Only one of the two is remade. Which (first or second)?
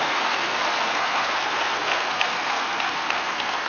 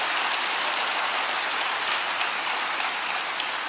first